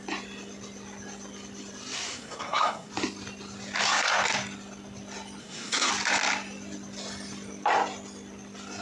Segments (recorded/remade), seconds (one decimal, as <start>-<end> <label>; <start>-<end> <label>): 0.0-2.1 recorded; 2.1-2.9 remade; 2.9-5.4 recorded; 5.4-5.9 remade; 5.9-8.8 recorded